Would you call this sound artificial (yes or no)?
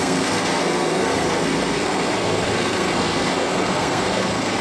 yes